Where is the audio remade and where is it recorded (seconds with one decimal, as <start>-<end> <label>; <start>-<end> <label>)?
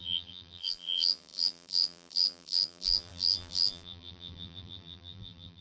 0.0-5.6 remade